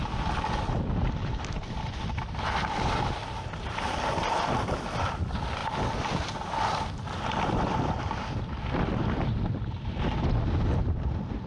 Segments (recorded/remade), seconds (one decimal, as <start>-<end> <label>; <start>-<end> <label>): 0.0-11.5 recorded

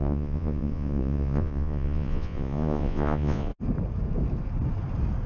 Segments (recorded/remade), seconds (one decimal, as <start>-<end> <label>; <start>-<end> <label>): 0.0-3.5 remade; 3.5-5.3 recorded

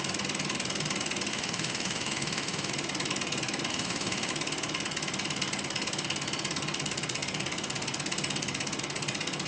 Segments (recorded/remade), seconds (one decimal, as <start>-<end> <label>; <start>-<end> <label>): 0.0-1.3 recorded; 1.3-2.7 remade; 2.7-3.7 recorded; 3.7-4.3 remade; 4.3-9.5 recorded

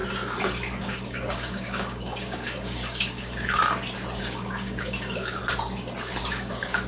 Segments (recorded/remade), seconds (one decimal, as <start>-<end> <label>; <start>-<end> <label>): 0.0-0.8 recorded; 0.8-3.6 remade; 3.6-4.2 recorded; 4.2-5.4 remade; 5.4-6.2 recorded; 6.2-6.9 remade

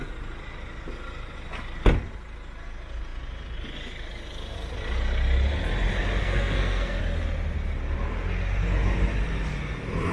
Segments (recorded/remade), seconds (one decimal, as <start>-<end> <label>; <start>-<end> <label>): 0.0-6.2 recorded; 6.2-7.0 remade; 7.0-10.1 recorded

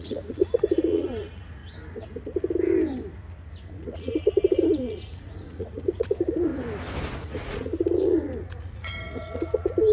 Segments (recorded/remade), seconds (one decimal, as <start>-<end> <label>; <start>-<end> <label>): 0.0-1.6 remade; 1.6-3.7 recorded; 3.7-6.5 remade; 6.5-7.2 recorded; 7.2-9.9 remade

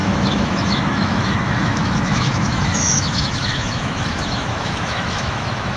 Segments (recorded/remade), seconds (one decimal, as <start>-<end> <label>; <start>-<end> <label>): 0.0-5.8 remade